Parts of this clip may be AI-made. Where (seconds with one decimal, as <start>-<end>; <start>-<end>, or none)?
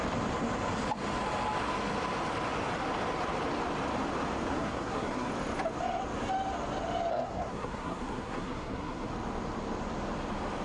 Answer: 4.5-5.3; 7.1-9.1